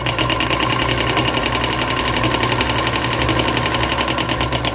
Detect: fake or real real